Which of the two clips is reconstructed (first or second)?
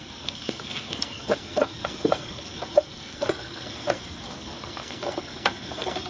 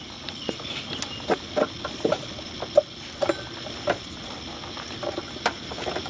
first